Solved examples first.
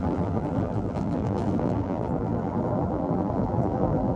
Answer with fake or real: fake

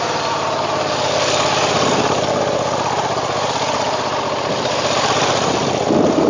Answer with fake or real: real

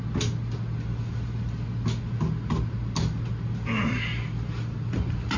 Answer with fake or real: real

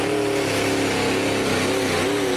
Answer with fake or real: real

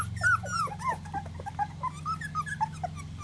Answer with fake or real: real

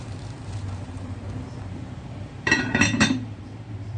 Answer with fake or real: fake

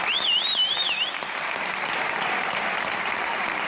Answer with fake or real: fake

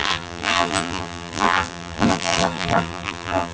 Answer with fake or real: fake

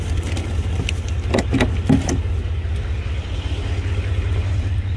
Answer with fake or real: real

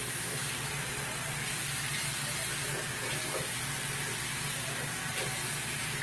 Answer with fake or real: real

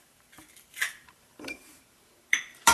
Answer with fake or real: fake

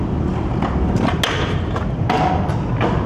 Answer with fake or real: real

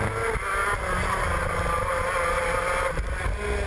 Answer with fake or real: real